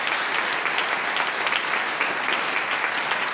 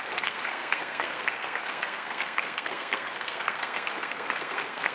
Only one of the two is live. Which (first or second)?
first